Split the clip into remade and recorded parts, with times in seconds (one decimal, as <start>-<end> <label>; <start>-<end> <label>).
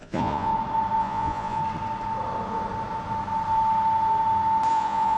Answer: 0.0-0.5 remade; 0.5-1.0 recorded; 1.0-1.6 remade; 1.6-4.7 recorded; 4.7-5.2 remade